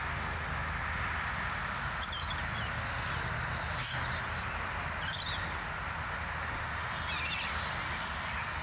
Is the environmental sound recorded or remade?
recorded